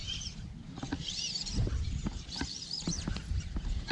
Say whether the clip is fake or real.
real